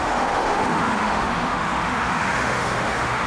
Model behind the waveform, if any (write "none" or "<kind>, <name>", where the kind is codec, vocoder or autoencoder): autoencoder, DAC-VAE